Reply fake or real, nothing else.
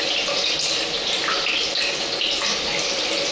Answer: real